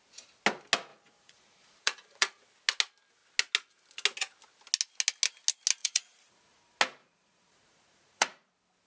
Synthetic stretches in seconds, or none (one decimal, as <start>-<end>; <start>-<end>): 0.9-2.4; 5.8-6.6; 7.0-8.5